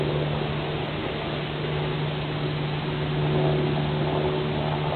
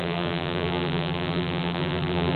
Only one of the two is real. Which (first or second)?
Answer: first